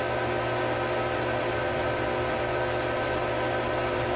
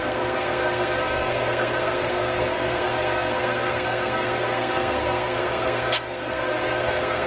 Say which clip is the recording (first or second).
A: first